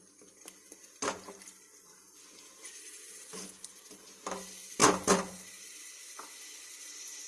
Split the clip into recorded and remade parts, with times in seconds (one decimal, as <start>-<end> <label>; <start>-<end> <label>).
0.0-7.3 recorded